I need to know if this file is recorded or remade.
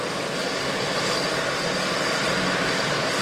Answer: recorded